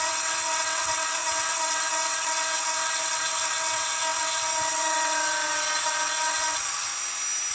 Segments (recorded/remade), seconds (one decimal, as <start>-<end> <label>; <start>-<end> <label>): 0.0-6.9 remade; 6.9-7.5 recorded

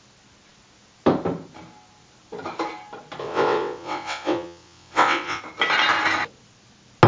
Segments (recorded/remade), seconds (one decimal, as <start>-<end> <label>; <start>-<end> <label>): 0.0-3.2 recorded; 3.2-5.4 remade; 5.4-7.1 recorded

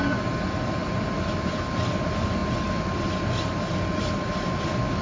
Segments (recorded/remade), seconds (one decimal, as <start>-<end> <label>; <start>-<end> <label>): 0.0-5.0 recorded